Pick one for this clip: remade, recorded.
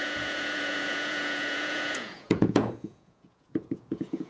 remade